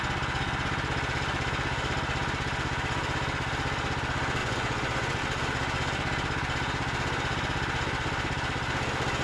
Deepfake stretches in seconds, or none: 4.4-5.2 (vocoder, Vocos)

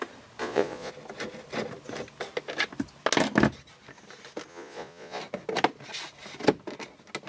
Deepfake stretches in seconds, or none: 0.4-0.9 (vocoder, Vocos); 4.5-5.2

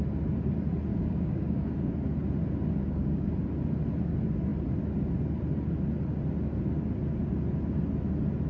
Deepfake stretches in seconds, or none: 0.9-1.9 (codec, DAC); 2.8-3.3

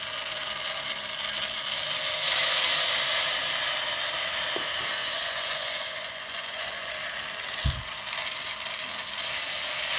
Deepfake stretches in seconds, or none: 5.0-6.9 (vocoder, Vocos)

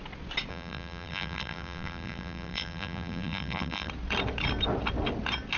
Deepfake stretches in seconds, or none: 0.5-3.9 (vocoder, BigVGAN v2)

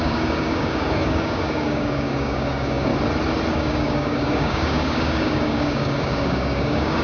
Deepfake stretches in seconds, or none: 0.0-2.9 (codec, DAC); 3.5-7.0

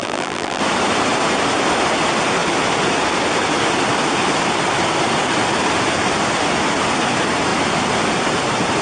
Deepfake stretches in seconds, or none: 0.0-0.6 (vocoder, BigVGAN v2)

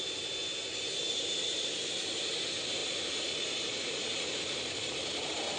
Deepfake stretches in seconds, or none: 0.0-0.4 (vocoder, BigVGAN v2); 1.1-5.6